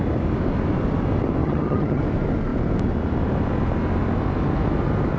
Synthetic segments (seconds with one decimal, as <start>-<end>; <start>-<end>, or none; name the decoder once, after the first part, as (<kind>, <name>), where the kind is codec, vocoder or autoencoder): 1.4-2.0 (vocoder, HiFi-GAN)